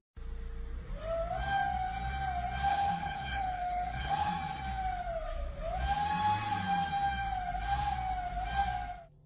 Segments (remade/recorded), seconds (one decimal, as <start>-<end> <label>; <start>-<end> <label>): 0.0-2.7 recorded; 2.7-4.3 remade; 4.3-9.3 recorded